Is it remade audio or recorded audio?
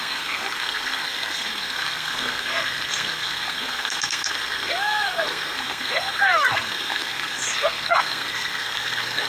remade